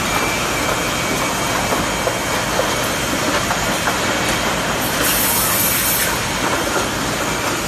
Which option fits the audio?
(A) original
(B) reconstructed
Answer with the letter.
A